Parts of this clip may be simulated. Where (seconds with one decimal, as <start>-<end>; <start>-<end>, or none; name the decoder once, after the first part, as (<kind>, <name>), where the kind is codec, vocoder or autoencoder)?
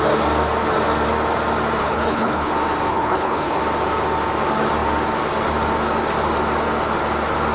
1.8-2.5 (codec, HILCodec); 2.9-3.6